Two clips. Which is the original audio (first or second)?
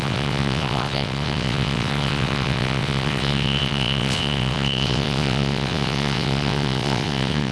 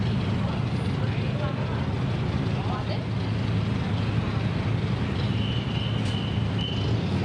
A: second